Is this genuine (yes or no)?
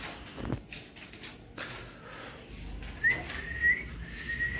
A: yes